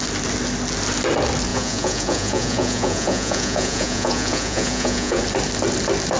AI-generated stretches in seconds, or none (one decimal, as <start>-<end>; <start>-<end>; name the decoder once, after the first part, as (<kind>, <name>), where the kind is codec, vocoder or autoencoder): 1.5-5.2 (vocoder, Vocos)

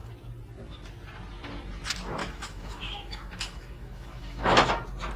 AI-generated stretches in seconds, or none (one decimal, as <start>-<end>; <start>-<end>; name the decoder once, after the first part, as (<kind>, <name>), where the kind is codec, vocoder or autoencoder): 2.2-4.7 (autoencoder, DAC-VAE)